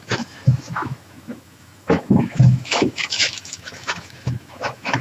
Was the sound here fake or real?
fake